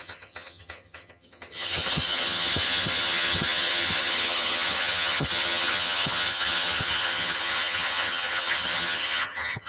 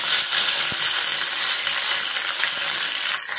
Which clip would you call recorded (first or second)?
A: second